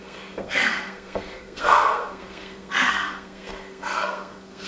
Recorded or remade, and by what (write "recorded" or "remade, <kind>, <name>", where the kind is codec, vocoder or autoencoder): remade, codec, SNAC